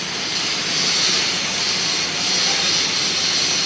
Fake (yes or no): no